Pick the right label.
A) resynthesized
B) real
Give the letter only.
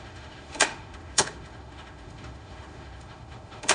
A